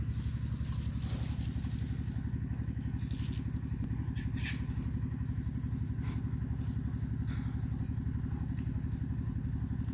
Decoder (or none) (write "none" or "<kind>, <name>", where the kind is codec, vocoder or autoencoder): none